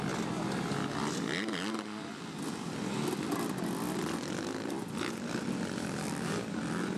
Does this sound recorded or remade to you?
recorded